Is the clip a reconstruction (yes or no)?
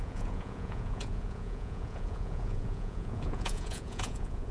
yes